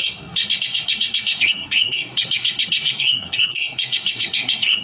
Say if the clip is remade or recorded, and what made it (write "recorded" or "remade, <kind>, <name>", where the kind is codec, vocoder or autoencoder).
remade, codec, SNAC